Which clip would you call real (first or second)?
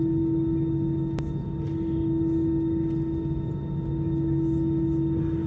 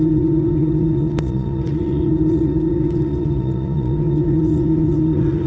first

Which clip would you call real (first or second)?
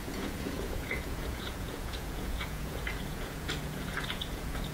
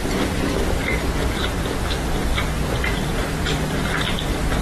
second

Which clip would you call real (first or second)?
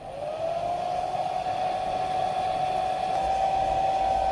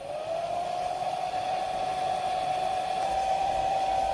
first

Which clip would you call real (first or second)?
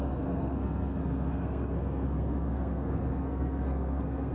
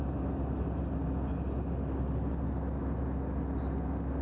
second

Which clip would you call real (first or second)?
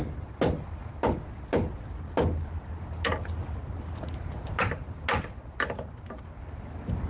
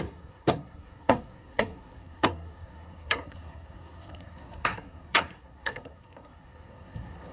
first